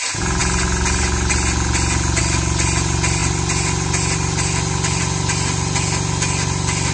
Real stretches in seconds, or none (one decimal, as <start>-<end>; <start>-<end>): 0.0-6.9